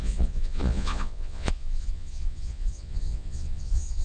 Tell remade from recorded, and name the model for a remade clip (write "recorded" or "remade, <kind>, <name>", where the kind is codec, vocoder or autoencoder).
remade, vocoder, Vocos